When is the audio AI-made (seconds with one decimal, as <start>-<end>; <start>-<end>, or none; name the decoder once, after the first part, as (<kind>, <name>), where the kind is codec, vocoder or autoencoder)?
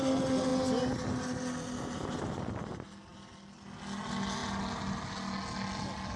none